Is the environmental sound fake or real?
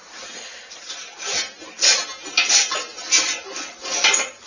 real